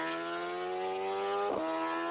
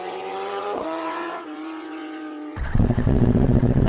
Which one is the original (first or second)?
first